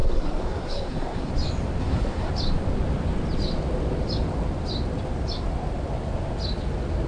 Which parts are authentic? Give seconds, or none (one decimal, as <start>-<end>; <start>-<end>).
1.3-1.8; 2.3-7.1